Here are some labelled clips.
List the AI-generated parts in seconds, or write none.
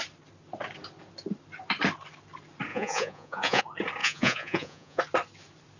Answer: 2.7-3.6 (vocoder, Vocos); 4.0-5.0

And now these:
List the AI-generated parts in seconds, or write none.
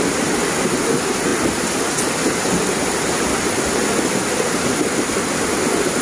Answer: none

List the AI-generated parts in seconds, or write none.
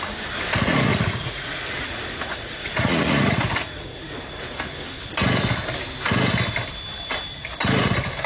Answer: 0.9-4.2 (vocoder, Vocos)